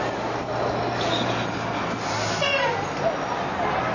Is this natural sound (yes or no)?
yes